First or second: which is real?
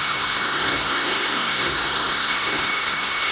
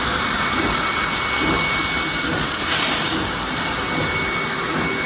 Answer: second